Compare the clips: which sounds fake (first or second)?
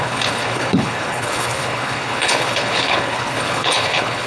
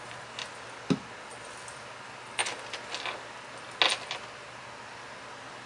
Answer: first